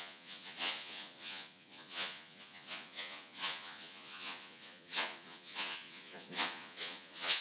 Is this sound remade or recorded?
remade